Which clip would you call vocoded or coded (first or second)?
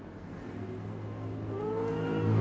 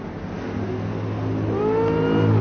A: first